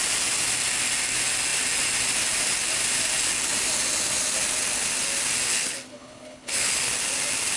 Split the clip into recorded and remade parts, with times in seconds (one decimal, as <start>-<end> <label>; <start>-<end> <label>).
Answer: 0.0-5.5 recorded; 5.5-6.9 remade; 6.9-7.6 recorded